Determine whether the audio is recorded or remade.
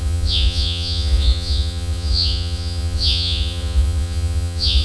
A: remade